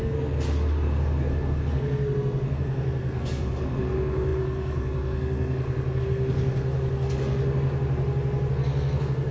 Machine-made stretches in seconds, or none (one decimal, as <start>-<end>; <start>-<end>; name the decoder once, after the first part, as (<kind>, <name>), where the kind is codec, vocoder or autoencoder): 0.0-7.4 (codec, SNAC); 8.5-9.3

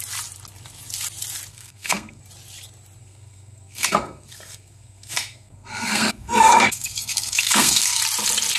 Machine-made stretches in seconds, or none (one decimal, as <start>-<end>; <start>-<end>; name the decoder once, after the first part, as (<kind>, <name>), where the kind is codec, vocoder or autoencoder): 1.5-2.2 (codec, SNAC); 3.0-8.0

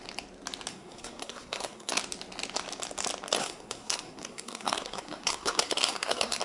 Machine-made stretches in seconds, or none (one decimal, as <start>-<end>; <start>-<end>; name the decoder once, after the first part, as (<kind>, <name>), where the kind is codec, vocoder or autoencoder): 0.7-2.0 (codec, SNAC); 3.4-6.4

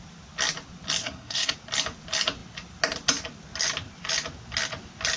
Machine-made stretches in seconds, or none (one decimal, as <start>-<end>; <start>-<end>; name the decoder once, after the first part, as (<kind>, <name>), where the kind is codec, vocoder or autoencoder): 1.0-1.5 (codec, SNAC)

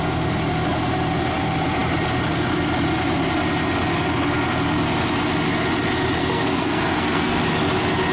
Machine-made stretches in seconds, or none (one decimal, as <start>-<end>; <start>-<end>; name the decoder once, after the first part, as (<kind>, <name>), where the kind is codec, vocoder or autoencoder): 6.2-7.4 (codec, SNAC)

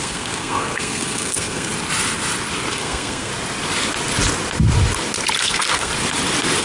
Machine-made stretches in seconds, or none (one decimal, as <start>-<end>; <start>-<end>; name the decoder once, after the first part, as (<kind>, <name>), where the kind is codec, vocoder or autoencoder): 0.0-1.7 (codec, SNAC); 2.7-3.3; 5.4-5.9

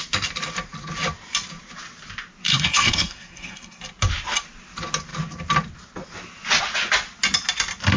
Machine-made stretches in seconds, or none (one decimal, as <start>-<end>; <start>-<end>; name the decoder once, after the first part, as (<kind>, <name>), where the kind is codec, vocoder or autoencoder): 2.5-3.8 (codec, SNAC)